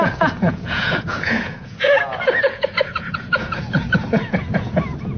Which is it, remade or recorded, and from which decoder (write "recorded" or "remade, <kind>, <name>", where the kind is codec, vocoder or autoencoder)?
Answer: remade, vocoder, Vocos